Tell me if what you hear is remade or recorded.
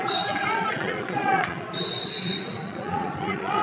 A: remade